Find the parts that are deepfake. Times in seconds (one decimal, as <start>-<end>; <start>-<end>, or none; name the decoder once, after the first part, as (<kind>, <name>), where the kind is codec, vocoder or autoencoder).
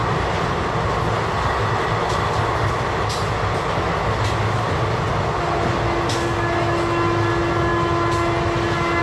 none